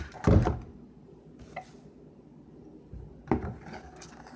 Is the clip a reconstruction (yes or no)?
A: no